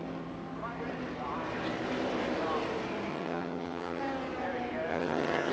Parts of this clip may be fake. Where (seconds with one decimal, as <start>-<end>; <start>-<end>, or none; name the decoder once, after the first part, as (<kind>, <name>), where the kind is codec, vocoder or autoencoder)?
3.1-4.0 (vocoder, HiFi-GAN); 4.9-5.5